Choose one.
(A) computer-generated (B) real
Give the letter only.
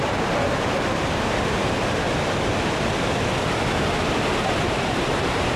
A